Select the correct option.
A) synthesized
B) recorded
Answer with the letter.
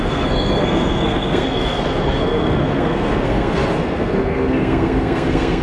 A